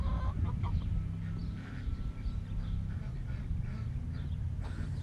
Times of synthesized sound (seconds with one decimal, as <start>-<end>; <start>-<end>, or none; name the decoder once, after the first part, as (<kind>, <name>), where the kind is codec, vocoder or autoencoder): none